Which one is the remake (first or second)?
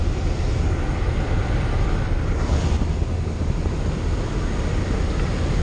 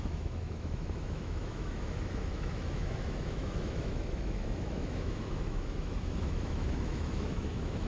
second